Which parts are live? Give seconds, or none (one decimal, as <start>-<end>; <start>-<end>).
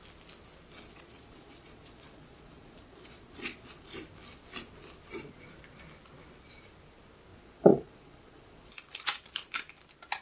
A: 0.0-0.9; 3.9-7.3; 8.7-10.2